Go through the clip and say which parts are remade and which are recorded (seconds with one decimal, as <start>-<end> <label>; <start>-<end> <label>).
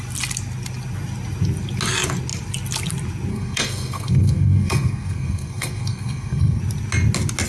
0.0-3.3 recorded; 3.3-6.6 remade; 6.6-7.5 recorded